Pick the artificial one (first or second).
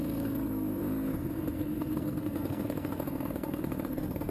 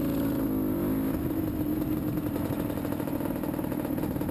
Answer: first